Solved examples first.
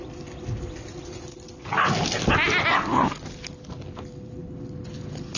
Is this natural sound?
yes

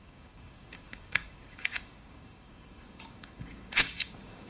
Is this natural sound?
no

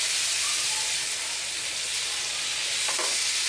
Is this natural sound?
yes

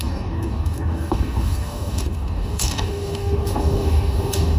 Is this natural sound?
no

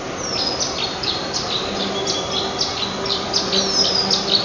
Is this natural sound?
yes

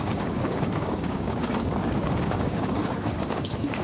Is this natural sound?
no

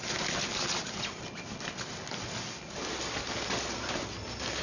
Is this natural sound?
yes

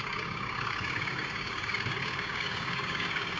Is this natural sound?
no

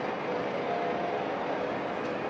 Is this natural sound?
yes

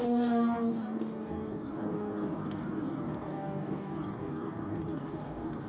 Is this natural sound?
no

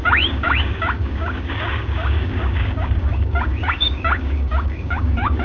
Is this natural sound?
no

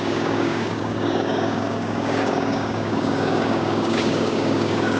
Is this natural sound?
no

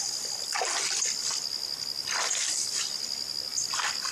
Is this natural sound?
yes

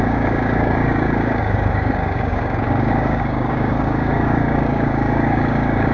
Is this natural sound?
no